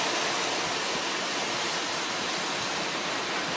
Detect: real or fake real